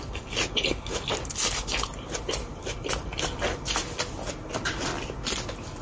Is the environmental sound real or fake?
real